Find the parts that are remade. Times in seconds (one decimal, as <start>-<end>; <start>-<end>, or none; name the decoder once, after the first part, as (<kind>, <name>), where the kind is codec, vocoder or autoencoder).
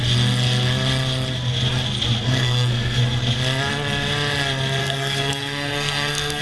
2.3-3.0 (codec, SNAC); 4.8-6.4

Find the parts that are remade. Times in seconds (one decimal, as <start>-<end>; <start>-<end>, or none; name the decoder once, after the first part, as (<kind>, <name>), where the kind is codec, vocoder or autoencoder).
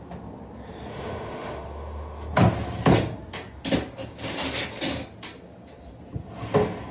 0.9-2.3 (autoencoder, DAC-VAE)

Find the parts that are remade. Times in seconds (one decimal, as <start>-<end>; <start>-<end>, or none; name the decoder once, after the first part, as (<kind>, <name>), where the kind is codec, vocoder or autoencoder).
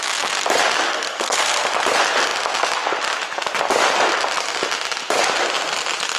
0.9-1.7 (codec, SNAC)